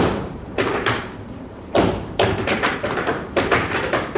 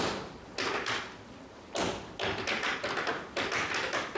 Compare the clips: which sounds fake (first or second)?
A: first